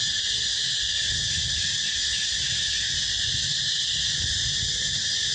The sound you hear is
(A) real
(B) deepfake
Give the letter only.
A